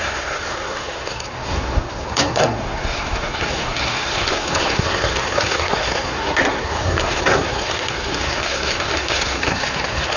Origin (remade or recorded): remade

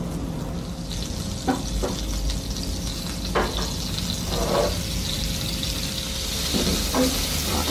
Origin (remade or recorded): recorded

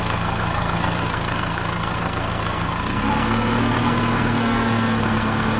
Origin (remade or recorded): remade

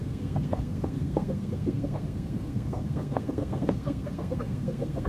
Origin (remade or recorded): remade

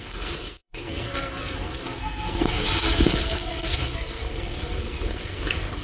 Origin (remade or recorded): remade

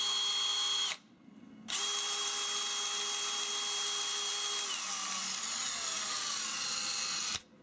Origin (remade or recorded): recorded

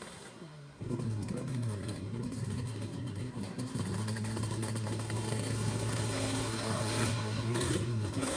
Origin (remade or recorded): remade